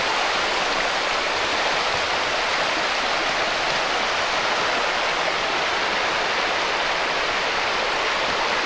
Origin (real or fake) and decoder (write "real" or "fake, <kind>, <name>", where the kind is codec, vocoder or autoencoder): real